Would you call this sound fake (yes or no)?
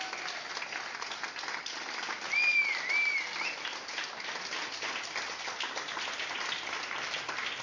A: no